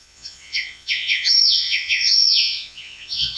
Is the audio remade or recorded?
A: remade